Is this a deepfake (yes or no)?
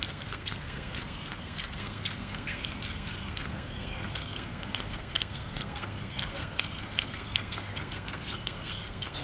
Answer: yes